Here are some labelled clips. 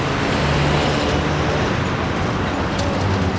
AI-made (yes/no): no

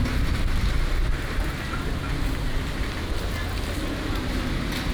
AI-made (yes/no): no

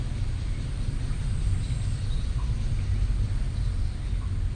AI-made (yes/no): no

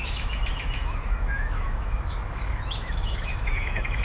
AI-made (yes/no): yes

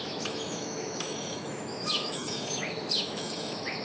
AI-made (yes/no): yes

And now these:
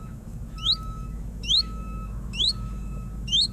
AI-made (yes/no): yes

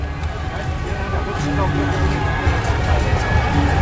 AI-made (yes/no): no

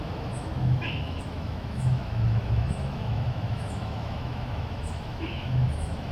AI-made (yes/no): yes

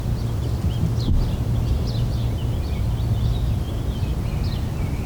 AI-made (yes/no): no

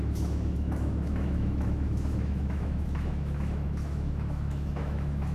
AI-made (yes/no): yes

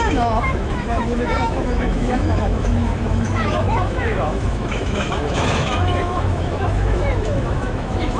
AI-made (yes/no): yes